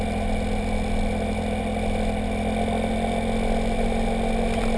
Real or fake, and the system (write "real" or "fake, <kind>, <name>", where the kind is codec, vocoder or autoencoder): real